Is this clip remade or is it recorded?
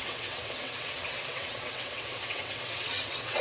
remade